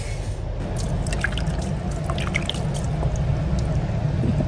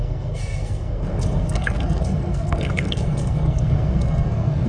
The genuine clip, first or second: first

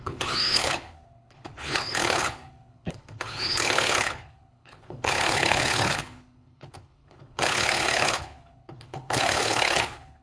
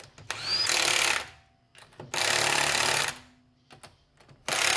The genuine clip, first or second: second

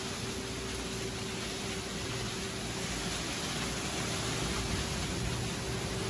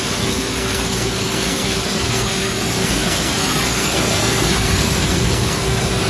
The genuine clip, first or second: first